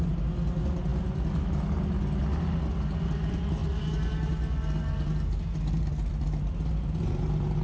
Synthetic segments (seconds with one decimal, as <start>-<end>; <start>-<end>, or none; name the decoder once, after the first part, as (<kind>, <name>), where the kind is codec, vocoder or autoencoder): none